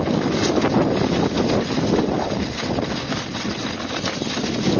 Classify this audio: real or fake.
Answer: real